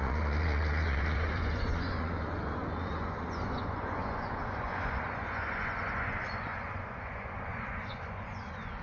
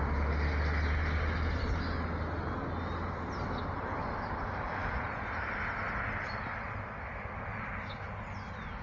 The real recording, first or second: second